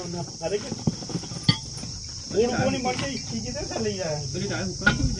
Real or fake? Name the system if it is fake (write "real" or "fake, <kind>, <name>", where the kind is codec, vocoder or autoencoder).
fake, vocoder, BigVGAN v2